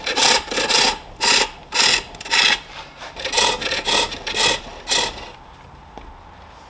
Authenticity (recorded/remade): recorded